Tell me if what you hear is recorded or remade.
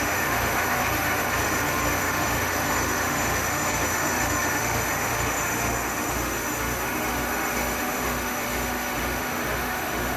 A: remade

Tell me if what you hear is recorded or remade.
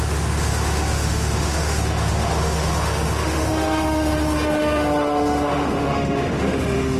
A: remade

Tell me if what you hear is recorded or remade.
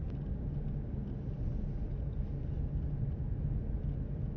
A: recorded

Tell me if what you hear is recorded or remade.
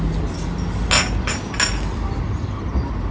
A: recorded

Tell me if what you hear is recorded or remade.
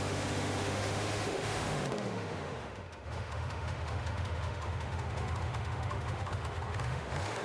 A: remade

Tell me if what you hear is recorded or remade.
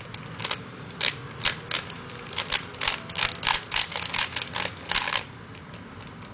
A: remade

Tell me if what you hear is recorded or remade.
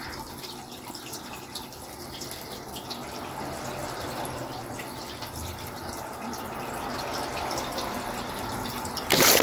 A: recorded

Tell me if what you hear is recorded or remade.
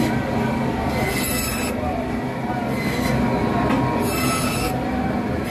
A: recorded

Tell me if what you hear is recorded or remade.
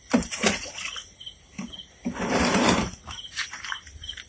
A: recorded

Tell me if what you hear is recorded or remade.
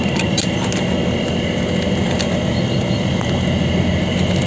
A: recorded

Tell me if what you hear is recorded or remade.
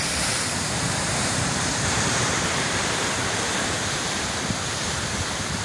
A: remade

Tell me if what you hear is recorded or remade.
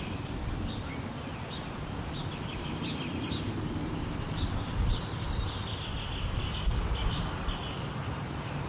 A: recorded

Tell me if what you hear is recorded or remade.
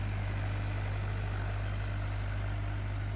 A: recorded